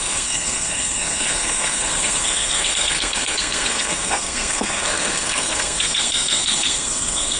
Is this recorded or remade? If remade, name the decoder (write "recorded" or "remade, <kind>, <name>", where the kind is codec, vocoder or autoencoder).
remade, codec, SNAC